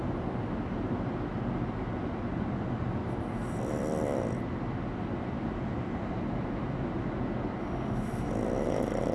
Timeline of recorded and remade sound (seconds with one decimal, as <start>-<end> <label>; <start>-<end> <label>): 0.0-7.6 recorded; 7.6-8.3 remade; 8.3-9.1 recorded